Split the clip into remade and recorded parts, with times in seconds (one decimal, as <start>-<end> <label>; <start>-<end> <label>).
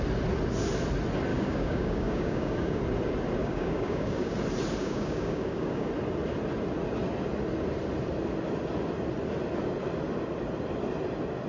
0.0-1.3 recorded; 1.3-2.8 remade; 2.8-3.4 recorded; 3.4-4.3 remade; 4.3-4.8 recorded; 4.8-5.9 remade; 5.9-11.5 recorded